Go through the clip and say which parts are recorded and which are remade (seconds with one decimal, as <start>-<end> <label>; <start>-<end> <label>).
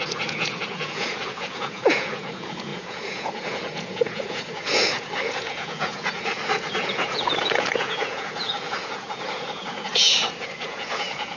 0.0-11.4 remade